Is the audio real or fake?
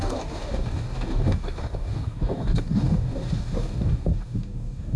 fake